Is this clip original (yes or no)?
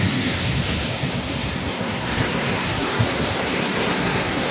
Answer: no